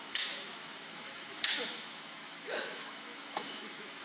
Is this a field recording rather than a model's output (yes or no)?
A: no